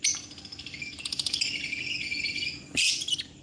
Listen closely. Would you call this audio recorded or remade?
recorded